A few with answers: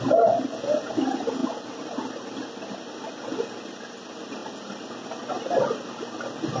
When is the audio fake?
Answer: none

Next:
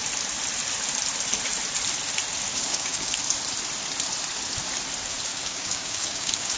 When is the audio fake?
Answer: 2.5-3.2 (codec, DAC); 5.3-6.6

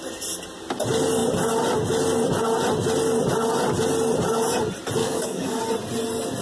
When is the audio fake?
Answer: 5.0-5.6 (codec, DAC)